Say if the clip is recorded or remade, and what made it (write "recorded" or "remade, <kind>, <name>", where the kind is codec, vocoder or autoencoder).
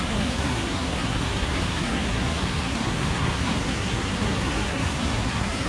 remade, codec, SNAC